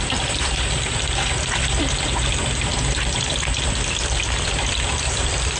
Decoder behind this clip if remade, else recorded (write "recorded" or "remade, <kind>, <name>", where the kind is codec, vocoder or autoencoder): remade, vocoder, BigVGAN v2